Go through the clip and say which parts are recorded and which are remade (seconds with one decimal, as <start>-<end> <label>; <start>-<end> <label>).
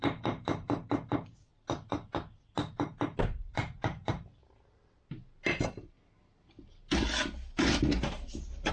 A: 0.0-1.5 remade; 1.5-3.2 recorded; 3.2-4.4 remade; 4.4-7.9 recorded; 7.9-8.7 remade